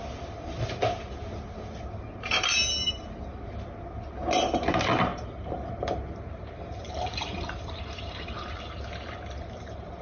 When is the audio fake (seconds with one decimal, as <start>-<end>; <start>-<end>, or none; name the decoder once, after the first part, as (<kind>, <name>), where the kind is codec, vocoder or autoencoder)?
5.1-10.0 (vocoder, BigVGAN v2)